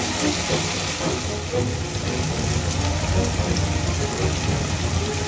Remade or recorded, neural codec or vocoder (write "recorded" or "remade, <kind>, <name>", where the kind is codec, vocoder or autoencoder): recorded